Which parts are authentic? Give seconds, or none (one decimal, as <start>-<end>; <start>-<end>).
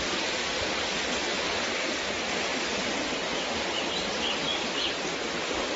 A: 0.0-5.8